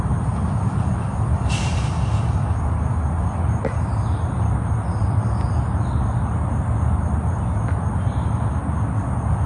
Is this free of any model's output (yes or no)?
yes